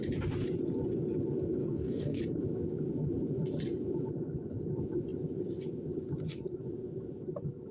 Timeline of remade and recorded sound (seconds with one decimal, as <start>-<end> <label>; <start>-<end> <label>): 0.0-1.6 recorded; 1.6-2.2 remade; 2.2-7.7 recorded